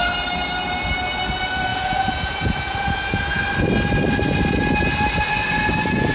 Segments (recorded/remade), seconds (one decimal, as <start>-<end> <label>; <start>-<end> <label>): 0.0-1.7 recorded; 1.7-3.4 remade; 3.4-6.1 recorded